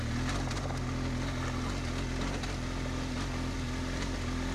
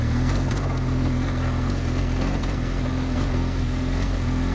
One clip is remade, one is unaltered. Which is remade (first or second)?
second